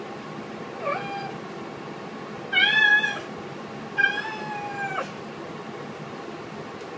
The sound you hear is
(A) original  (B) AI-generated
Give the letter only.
A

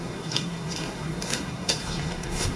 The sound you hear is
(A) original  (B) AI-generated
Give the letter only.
B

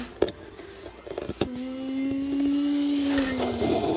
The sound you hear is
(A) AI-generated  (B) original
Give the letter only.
B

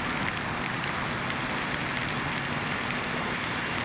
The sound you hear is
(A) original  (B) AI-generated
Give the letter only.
A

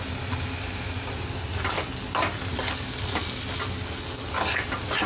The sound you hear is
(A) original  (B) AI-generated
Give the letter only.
A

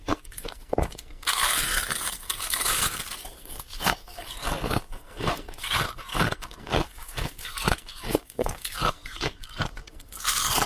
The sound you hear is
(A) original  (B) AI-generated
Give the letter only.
B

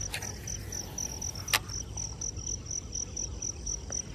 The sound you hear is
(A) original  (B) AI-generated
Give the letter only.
A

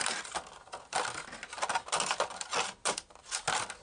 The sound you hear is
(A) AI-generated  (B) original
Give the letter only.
B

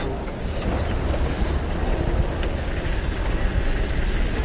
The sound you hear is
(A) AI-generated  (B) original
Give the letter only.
B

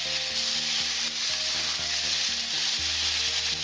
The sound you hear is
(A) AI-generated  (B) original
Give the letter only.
B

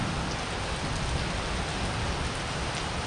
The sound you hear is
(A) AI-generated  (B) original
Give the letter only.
B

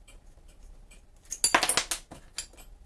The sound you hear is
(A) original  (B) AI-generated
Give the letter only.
A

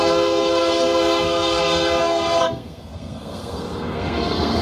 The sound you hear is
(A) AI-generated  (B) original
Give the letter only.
A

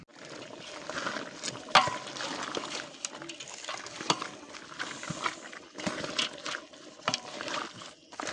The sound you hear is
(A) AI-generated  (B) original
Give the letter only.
B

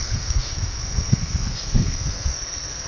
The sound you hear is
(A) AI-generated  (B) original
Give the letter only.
A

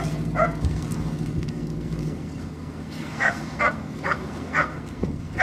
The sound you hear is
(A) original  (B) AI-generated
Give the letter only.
B